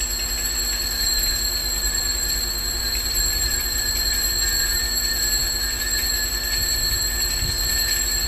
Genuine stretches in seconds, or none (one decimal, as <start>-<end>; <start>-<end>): 0.0-1.6; 4.3-8.3